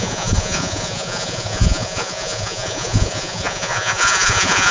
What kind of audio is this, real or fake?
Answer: fake